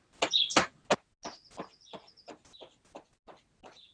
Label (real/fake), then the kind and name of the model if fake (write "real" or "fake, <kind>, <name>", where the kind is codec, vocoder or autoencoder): real